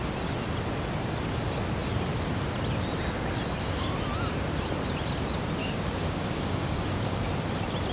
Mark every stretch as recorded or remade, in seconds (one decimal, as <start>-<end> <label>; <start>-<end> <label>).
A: 0.0-5.6 recorded; 5.6-7.3 remade; 7.3-7.9 recorded